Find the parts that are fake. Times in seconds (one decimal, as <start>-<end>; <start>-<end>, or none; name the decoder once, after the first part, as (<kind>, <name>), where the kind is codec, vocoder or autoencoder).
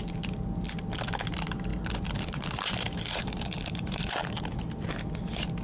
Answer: 1.7-5.0 (vocoder, BigVGAN v2)